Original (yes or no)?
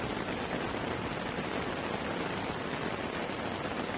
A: yes